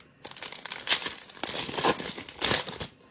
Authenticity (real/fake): real